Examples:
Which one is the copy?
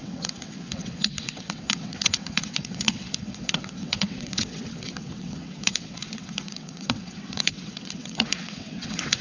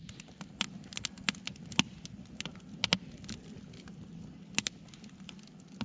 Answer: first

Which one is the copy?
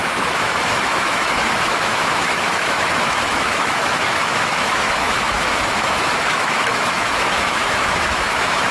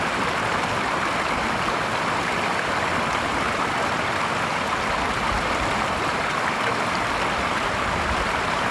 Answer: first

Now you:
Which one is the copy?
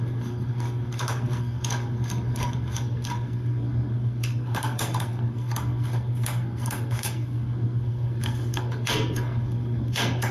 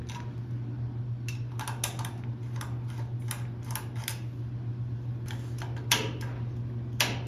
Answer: first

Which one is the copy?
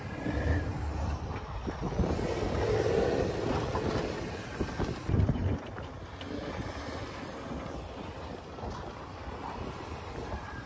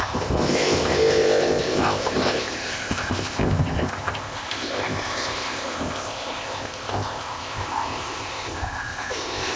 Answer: second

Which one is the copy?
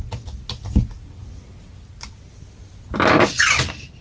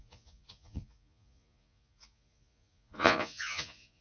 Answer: second